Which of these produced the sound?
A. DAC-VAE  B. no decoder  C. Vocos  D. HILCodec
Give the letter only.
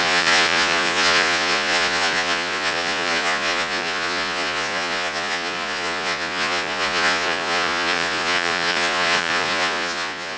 C